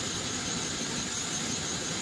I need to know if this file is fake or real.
fake